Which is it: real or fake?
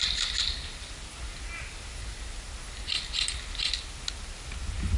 real